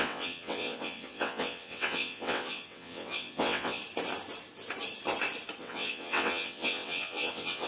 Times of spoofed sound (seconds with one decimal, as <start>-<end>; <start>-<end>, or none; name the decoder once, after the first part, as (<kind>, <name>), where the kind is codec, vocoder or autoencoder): 0.0-3.8 (vocoder, WaveNeXt); 5.6-7.7